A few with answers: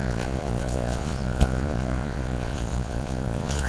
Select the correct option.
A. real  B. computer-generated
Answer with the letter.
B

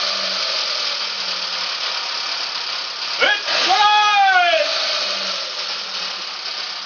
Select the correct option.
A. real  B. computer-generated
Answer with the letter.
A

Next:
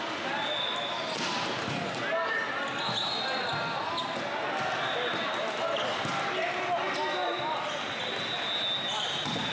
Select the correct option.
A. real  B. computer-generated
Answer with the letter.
A